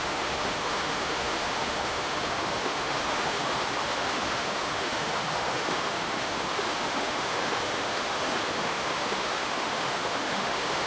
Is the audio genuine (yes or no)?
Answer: no